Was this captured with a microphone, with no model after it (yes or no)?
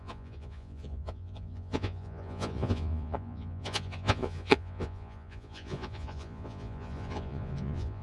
no